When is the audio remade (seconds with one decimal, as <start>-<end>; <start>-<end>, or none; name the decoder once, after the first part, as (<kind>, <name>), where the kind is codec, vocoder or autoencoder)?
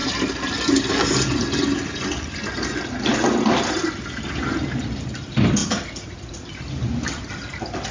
none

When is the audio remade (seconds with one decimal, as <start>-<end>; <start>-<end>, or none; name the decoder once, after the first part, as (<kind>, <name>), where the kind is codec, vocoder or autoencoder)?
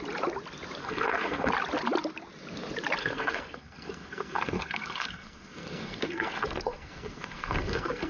0.8-1.5 (codec, SNAC); 3.0-8.1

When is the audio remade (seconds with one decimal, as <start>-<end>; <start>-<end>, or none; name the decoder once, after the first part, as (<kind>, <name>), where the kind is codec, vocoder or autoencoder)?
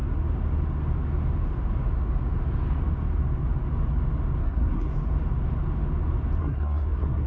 4.4-4.9 (codec, SNAC); 6.4-7.3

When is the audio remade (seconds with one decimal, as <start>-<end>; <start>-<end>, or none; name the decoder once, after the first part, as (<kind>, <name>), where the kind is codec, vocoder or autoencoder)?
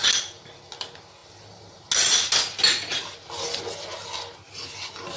none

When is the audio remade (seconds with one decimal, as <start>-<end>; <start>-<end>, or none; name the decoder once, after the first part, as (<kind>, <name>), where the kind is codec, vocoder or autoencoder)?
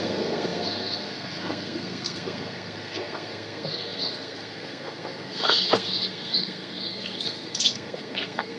0.0-8.6 (codec, SNAC)